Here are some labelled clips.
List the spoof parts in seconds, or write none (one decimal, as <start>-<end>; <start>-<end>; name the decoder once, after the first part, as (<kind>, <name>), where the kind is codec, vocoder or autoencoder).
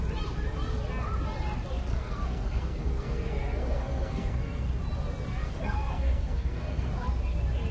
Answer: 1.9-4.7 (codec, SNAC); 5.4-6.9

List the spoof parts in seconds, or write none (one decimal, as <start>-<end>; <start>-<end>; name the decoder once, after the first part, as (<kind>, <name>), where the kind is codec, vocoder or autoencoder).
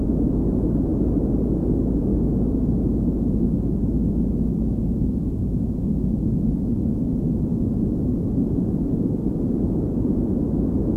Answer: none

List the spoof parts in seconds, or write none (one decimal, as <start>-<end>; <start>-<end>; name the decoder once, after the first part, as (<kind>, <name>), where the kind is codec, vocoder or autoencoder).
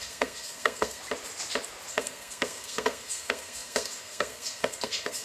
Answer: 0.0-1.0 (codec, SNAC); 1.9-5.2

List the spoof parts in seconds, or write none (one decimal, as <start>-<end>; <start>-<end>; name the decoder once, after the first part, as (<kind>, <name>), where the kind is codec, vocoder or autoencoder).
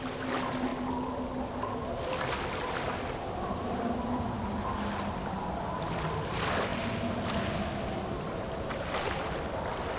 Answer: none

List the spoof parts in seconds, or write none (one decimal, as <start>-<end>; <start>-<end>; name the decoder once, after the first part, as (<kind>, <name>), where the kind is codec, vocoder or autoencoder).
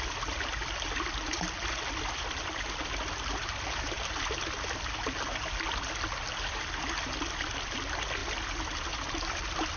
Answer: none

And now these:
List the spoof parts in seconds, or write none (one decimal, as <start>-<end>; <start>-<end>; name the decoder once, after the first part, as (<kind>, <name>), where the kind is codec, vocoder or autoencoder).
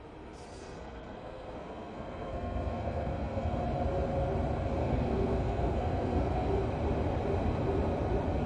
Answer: 0.5-3.6 (codec, SNAC); 4.8-6.6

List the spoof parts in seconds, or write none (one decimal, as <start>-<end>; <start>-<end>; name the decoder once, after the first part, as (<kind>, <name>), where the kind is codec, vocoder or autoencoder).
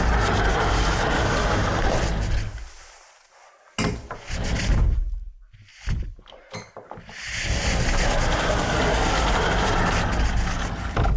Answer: none